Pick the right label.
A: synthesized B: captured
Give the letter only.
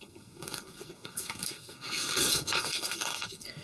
A